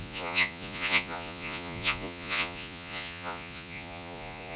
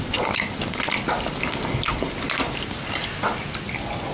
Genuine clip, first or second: second